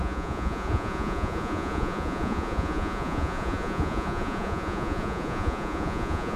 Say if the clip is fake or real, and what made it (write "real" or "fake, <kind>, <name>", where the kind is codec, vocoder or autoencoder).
fake, vocoder, Vocos